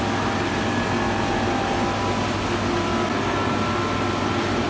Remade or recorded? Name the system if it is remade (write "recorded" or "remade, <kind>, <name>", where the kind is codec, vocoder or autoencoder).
recorded